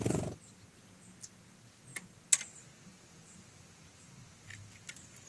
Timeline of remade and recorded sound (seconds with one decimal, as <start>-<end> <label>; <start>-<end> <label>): 0.0-5.3 recorded